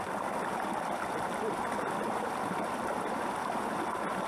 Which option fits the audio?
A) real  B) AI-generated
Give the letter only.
B